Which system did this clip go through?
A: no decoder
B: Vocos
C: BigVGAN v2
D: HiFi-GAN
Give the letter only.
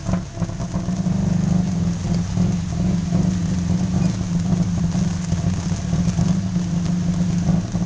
A